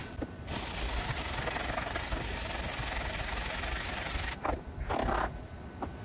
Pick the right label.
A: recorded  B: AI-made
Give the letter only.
A